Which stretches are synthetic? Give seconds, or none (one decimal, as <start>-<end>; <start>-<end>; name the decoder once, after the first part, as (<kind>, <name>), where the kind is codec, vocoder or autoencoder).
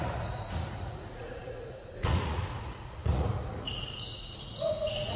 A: 0.0-5.2 (vocoder, Vocos)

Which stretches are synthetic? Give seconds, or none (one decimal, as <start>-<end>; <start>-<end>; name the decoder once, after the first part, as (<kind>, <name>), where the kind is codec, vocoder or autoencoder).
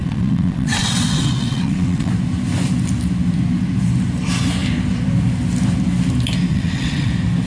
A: 0.0-2.1 (vocoder, WaveNeXt); 6.5-7.1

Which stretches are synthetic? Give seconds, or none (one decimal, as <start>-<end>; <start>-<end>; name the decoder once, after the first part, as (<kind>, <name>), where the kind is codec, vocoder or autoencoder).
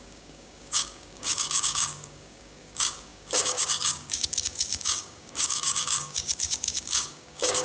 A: 0.0-7.6 (codec, DAC)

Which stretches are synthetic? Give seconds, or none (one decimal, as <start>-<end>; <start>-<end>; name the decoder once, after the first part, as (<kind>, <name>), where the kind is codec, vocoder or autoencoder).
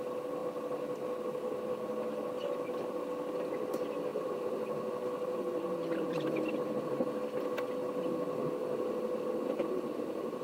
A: 4.1-6.9 (vocoder, BigVGAN v2)